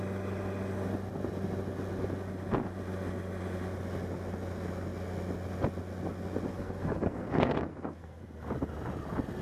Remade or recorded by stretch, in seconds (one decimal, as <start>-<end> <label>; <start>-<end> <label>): 0.0-6.5 recorded; 6.5-8.2 remade; 8.2-9.4 recorded

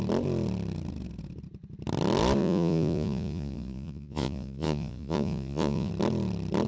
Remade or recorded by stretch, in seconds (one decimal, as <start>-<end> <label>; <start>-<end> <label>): 0.0-2.4 recorded; 2.4-5.9 remade; 5.9-6.7 recorded

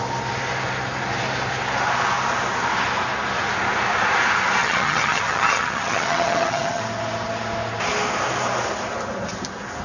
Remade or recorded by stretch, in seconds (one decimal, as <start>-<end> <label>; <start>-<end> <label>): 0.0-4.6 recorded; 4.6-6.8 remade; 6.8-9.8 recorded

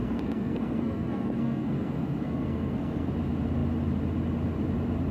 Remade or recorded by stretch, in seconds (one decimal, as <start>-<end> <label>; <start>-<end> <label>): 0.0-3.1 remade; 3.1-5.1 recorded

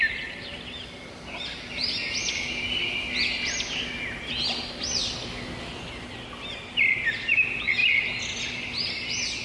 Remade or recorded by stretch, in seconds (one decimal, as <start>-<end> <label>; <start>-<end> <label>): 0.0-9.4 recorded

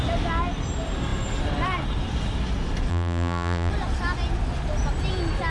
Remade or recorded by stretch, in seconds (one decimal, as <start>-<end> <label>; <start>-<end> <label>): 0.0-2.9 recorded; 2.9-3.7 remade; 3.7-5.5 recorded